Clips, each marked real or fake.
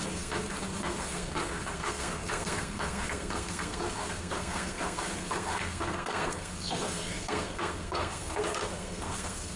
fake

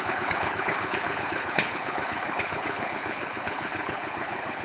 fake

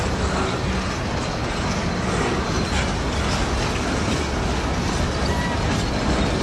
real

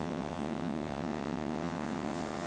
fake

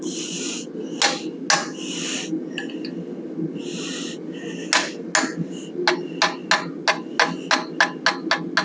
real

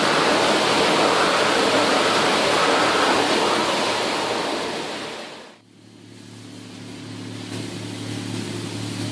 real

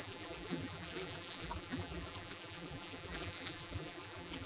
fake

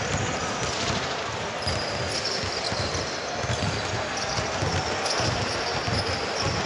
real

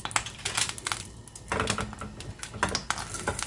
real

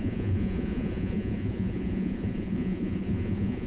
fake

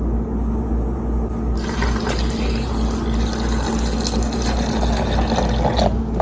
real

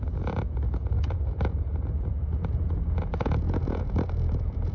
fake